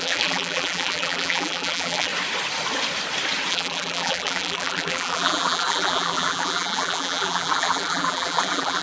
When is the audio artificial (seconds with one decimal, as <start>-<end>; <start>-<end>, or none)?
0.0-2.1; 3.5-8.8

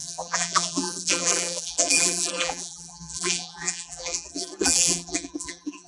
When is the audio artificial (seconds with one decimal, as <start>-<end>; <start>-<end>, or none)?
0.0-5.9